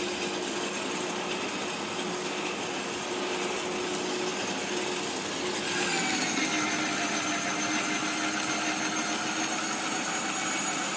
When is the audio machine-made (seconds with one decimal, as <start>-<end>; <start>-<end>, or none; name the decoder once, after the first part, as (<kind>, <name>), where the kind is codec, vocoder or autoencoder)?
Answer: none

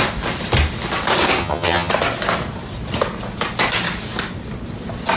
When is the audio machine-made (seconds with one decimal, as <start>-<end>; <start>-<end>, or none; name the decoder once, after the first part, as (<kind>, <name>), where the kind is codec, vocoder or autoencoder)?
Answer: 1.4-1.9 (vocoder, HiFi-GAN)

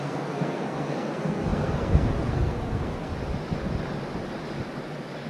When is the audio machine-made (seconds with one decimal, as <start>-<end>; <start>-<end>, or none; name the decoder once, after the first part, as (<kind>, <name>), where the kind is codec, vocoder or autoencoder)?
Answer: 0.0-3.1 (codec, SNAC)